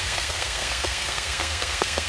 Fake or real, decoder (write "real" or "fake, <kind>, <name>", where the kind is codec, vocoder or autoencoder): fake, codec, SNAC